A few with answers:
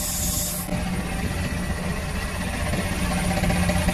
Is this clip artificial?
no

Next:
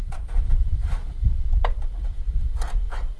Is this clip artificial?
no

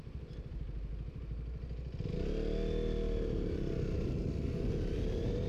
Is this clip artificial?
no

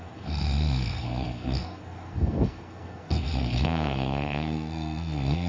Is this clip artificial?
yes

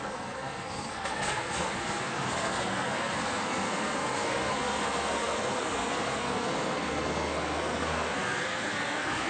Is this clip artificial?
yes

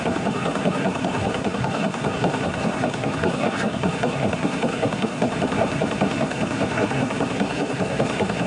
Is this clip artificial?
yes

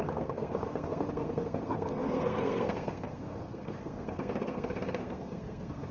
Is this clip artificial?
yes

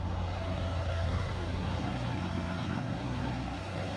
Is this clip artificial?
yes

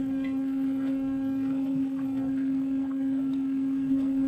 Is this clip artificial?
yes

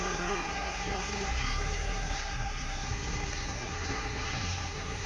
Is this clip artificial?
yes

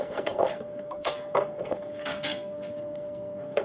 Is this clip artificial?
yes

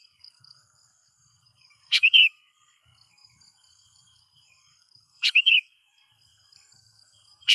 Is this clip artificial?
yes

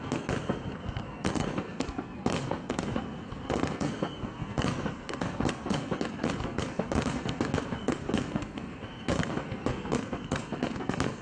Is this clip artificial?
yes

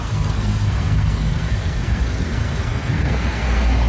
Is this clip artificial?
yes